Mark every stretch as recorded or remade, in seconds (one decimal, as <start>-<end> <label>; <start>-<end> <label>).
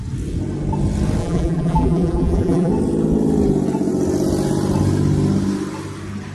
0.0-1.2 recorded; 1.2-2.7 remade; 2.7-6.3 recorded